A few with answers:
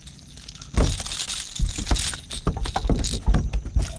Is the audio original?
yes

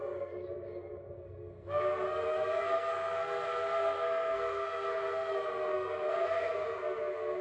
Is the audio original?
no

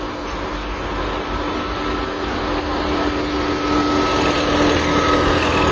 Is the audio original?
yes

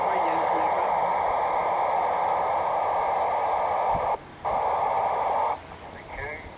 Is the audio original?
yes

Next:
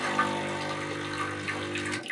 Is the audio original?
yes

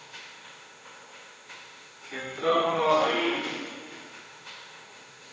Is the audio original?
no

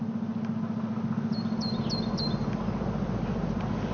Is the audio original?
yes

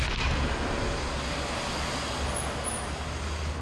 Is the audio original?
yes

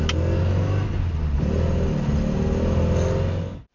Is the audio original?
yes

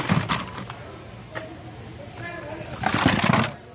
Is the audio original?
yes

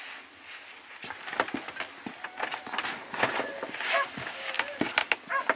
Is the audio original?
yes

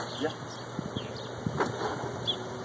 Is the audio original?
yes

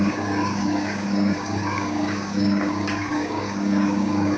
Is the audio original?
no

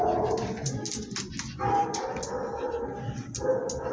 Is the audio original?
yes